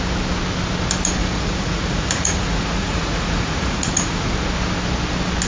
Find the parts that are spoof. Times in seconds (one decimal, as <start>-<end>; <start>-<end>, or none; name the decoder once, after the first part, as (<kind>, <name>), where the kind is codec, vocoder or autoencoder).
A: 1.2-4.3 (vocoder, Vocos)